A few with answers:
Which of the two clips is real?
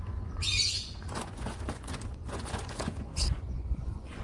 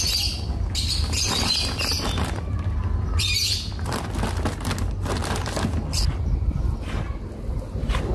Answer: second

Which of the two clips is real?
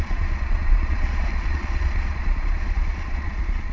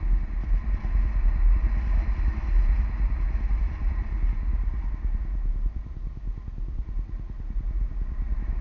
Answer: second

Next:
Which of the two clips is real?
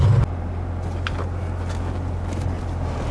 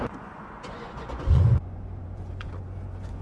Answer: first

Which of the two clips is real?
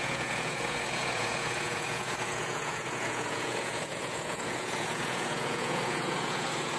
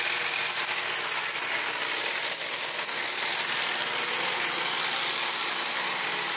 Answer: second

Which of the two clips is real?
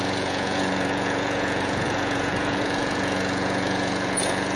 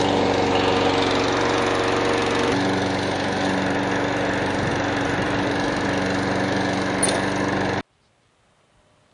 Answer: second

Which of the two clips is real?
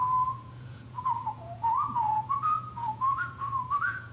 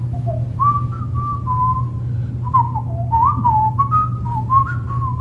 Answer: second